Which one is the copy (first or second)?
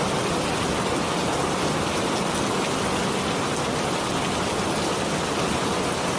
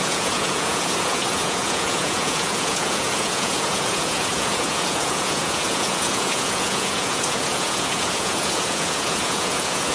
second